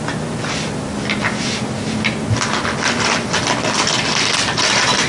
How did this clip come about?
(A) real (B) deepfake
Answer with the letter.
A